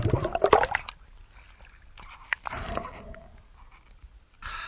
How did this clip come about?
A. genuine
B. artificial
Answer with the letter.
A